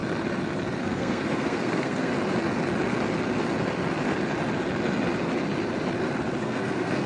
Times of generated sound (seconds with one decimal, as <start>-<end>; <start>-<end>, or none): 0.8-2.1; 6.4-7.1